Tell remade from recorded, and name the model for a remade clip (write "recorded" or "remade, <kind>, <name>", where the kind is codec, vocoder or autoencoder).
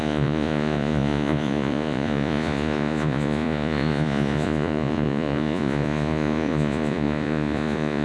remade, vocoder, Vocos